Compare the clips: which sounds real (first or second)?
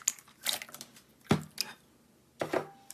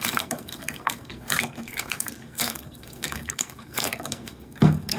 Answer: first